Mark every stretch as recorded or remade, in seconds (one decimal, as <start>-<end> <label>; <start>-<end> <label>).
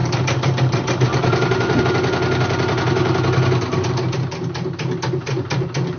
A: 0.0-1.8 remade; 1.8-6.0 recorded